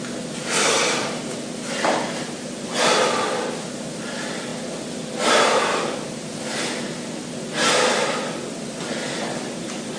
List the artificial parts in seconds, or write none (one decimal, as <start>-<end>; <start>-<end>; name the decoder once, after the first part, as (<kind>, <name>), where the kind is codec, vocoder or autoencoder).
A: none